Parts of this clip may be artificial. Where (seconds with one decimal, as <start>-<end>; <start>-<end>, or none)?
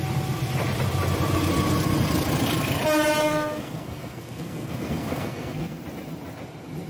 3.2-5.8